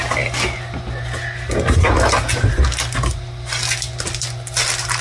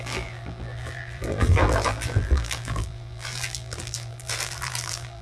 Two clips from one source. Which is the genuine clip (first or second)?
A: first